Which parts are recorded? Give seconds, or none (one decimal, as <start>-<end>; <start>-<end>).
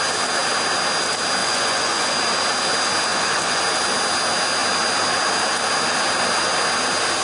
0.0-1.4; 2.1-3.1; 3.6-7.2